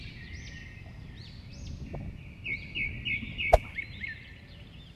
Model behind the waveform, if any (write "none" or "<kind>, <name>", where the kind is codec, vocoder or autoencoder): none